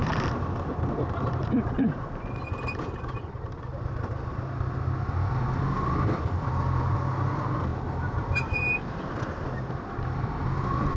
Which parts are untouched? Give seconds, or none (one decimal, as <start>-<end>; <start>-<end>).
0.0-11.0

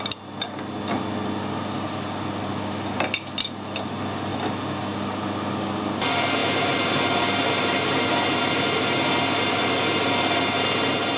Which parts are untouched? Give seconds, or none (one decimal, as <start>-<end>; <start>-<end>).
0.0-11.2

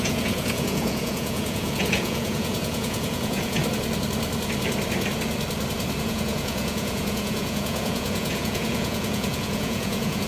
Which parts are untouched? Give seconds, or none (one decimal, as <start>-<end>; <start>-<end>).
3.6-6.0

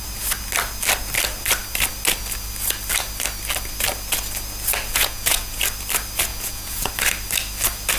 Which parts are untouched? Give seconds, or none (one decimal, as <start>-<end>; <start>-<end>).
0.0-4.9; 5.6-6.3; 6.9-8.0

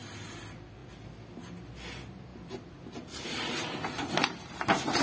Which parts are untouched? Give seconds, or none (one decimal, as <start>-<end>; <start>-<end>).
0.0-5.0

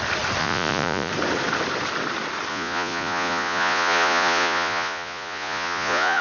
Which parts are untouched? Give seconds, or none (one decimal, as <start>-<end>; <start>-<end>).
0.0-0.4; 1.1-2.5

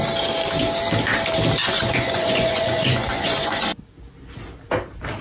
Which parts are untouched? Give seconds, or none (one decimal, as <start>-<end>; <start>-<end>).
0.0-1.6; 3.7-5.2